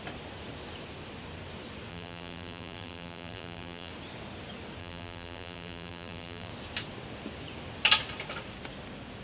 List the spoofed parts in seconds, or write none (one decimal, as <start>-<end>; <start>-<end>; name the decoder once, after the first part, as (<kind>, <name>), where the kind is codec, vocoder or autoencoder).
1.9-3.9 (vocoder, BigVGAN v2); 4.8-6.5